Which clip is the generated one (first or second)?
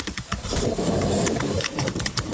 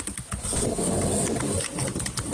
first